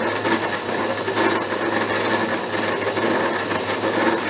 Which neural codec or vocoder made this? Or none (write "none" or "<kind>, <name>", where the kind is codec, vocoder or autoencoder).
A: none